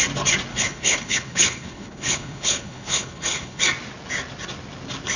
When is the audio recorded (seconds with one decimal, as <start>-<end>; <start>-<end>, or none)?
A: 0.0-0.5; 3.6-5.2